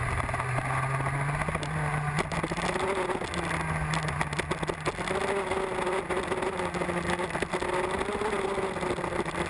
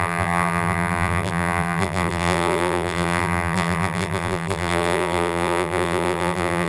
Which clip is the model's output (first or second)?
second